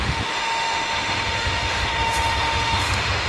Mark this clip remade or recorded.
remade